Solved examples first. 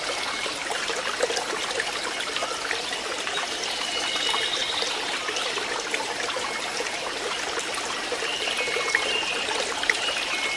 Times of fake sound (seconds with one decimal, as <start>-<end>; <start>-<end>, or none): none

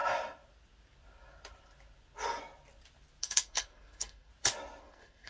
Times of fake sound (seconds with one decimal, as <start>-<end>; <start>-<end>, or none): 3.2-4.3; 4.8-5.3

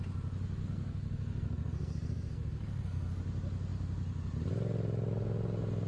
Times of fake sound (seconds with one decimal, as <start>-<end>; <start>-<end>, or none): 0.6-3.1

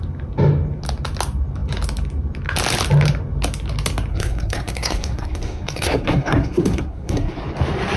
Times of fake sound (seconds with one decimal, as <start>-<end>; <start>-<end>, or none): 4.1-7.4

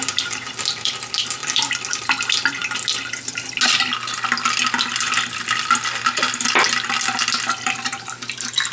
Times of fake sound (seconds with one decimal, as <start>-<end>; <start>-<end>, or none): 0.0-2.6; 7.5-8.7

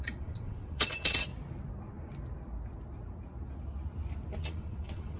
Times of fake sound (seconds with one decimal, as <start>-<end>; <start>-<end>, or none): 0.0-1.3; 4.4-5.2